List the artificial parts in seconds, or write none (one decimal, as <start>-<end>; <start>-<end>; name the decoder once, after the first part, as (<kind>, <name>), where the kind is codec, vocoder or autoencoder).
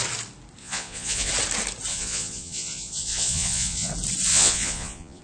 0.6-1.3 (vocoder, Vocos); 1.9-3.9; 4.3-5.2